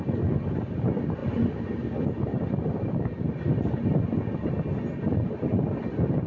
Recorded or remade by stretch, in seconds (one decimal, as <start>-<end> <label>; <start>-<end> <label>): 0.0-6.3 recorded